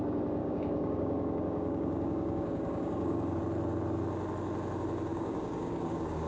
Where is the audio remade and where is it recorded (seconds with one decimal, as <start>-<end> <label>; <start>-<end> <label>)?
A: 0.0-0.4 recorded; 0.4-3.4 remade; 3.4-5.1 recorded; 5.1-6.3 remade